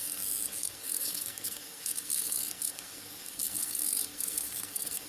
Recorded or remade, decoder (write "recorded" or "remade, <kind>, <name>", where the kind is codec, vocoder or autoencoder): remade, codec, SNAC